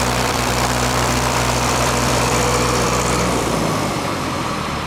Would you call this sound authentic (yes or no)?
no